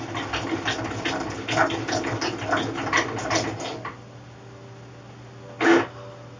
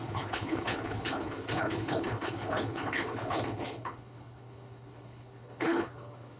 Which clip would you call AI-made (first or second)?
second